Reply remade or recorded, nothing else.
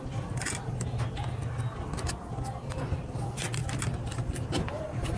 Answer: recorded